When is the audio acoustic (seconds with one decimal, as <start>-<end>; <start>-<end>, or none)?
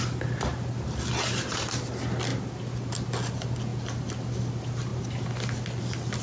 0.0-6.2